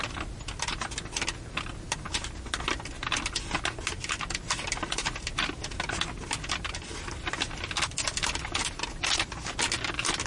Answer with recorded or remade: recorded